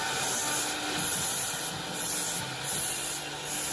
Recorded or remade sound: recorded